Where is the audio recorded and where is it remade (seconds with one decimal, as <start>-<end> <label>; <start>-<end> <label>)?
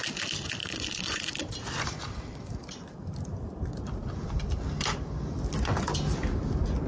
0.0-0.6 recorded; 0.6-1.2 remade; 1.2-6.9 recorded